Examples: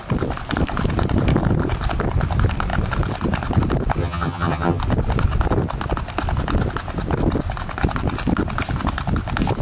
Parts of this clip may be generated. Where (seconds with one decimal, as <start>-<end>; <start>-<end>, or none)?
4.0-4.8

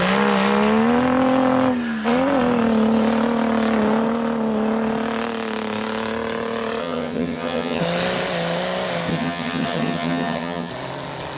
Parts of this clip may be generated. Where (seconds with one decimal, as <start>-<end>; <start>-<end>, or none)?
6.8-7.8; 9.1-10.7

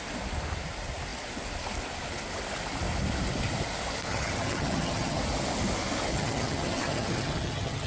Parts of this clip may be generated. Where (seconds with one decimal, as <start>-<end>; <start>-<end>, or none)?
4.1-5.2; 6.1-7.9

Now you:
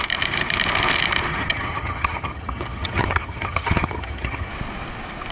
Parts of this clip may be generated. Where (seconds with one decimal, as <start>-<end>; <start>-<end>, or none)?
1.3-4.5

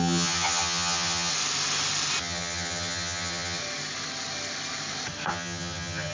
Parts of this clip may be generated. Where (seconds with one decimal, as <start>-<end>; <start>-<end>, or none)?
0.0-1.3; 2.2-3.6; 5.3-6.1

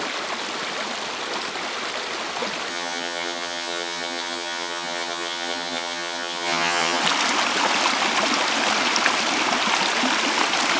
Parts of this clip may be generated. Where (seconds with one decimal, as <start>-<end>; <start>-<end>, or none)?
2.7-7.0